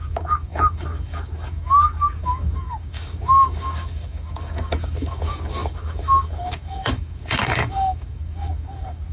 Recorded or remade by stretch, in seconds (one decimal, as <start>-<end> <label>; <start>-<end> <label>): 0.0-9.1 remade